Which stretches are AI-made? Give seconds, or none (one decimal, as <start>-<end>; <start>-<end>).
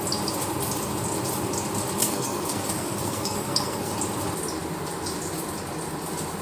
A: 2.0-3.9